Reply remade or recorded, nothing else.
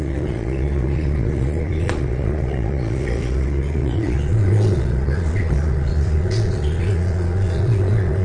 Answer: remade